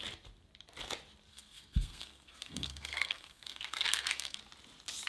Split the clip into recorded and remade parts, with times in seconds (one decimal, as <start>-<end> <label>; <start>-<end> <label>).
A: 0.0-1.3 recorded; 1.3-4.4 remade; 4.4-5.1 recorded

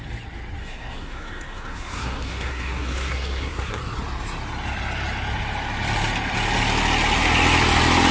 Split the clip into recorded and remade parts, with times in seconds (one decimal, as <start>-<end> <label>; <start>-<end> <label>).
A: 0.0-0.6 recorded; 0.6-3.8 remade; 3.8-8.1 recorded

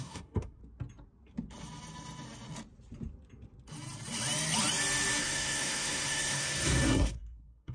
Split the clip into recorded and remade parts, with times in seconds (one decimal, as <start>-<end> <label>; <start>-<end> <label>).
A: 0.0-0.6 remade; 0.6-5.2 recorded; 5.2-7.7 remade